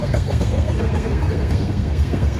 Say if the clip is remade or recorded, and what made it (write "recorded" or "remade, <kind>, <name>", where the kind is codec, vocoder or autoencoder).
remade, codec, SNAC